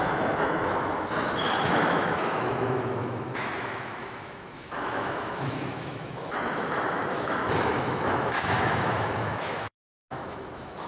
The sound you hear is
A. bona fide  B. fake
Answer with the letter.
B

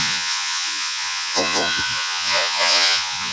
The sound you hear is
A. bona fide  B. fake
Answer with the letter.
B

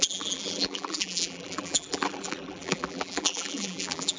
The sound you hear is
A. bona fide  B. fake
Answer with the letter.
B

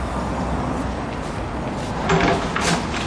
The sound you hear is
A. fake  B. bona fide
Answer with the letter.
B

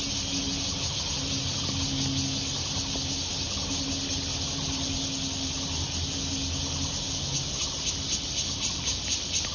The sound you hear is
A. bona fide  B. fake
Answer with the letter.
A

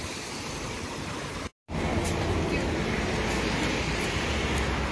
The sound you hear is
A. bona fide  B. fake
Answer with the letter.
A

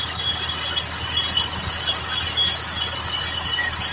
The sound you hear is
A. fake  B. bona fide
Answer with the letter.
B